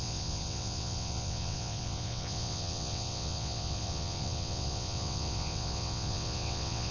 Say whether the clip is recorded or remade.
remade